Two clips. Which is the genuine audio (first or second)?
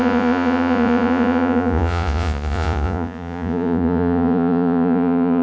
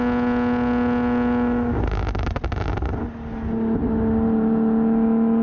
second